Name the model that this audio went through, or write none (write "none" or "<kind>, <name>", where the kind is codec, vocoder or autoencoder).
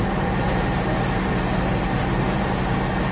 vocoder, BigVGAN v2